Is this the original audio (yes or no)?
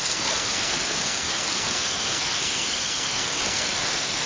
no